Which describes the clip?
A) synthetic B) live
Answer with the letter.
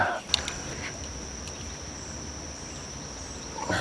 B